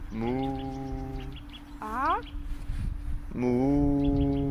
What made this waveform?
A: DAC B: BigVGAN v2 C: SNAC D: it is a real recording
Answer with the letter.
D